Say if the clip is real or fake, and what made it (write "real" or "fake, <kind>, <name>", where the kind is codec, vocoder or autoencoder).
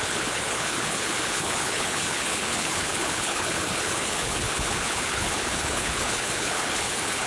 fake, codec, HILCodec